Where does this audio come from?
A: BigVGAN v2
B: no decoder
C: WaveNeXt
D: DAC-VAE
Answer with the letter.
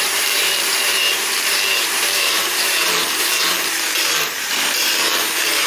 A